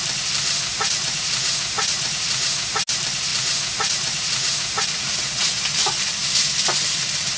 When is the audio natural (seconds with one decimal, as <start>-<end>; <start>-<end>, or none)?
0.0-0.7; 2.8-3.3; 5.6-7.4